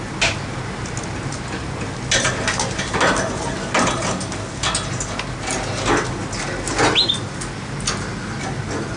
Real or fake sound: real